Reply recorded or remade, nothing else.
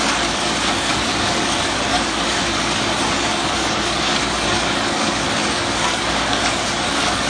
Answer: remade